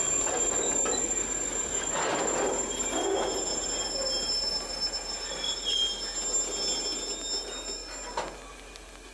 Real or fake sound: real